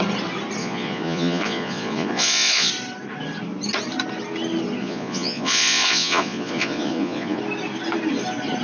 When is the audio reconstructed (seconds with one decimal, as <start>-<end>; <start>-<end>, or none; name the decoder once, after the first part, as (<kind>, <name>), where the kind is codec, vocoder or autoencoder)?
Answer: 0.6-2.7 (vocoder, Vocos); 4.8-7.4